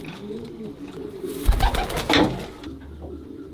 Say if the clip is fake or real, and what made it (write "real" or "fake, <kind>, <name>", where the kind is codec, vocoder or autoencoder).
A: real